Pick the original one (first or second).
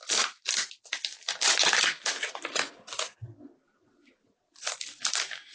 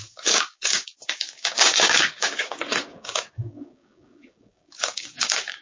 first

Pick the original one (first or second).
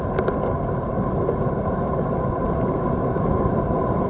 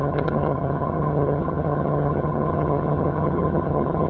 first